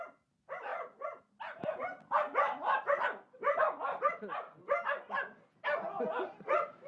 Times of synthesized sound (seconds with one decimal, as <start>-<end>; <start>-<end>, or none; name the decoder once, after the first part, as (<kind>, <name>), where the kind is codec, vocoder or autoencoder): none